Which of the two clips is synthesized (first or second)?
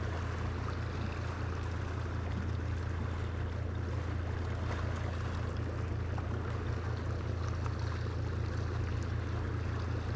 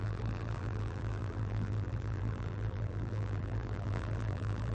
second